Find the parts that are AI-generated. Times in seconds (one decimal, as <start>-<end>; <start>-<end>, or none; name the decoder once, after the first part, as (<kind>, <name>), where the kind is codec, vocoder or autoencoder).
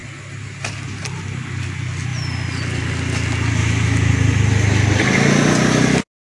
3.6-4.1 (autoencoder, DAC-VAE)